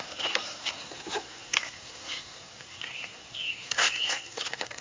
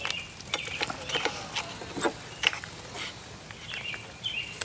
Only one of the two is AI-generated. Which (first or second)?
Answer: first